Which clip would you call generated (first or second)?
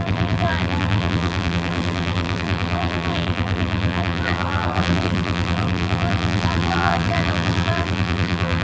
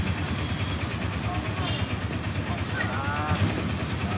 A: first